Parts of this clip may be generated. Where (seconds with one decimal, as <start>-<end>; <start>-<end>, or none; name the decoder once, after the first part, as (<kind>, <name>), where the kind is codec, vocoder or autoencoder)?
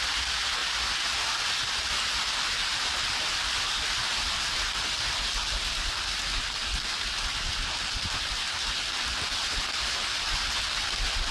none